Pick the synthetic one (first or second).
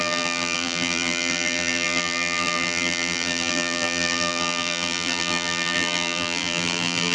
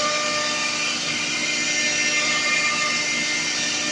first